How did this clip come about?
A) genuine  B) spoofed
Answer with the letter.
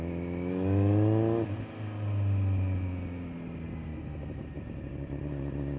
A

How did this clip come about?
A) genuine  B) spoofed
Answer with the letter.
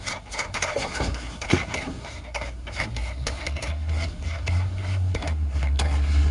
B